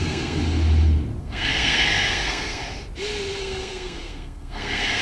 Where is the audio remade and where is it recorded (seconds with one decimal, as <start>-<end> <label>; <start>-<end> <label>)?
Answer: 0.0-0.4 remade; 0.4-1.2 recorded; 1.2-2.6 remade; 2.6-3.4 recorded; 3.4-5.0 remade